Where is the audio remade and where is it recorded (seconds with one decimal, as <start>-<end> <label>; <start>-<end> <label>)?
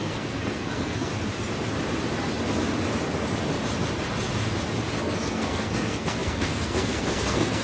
0.0-1.1 remade; 1.1-5.0 recorded; 5.0-7.6 remade